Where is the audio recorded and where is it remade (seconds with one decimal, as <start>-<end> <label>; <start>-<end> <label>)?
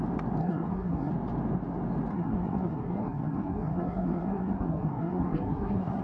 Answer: 0.0-0.4 recorded; 0.4-1.1 remade; 1.1-2.1 recorded; 2.1-6.0 remade